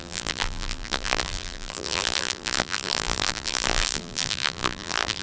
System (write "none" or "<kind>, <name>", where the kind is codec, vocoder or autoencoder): vocoder, BigVGAN v2